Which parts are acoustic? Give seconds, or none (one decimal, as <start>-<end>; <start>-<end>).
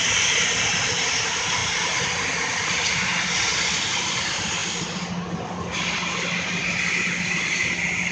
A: 0.0-4.6